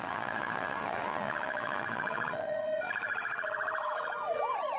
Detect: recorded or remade remade